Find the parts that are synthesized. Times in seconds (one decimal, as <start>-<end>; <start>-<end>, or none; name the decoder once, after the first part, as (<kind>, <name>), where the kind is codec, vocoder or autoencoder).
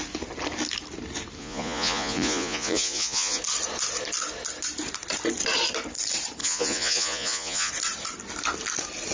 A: 1.4-3.4 (vocoder, Vocos); 6.4-7.7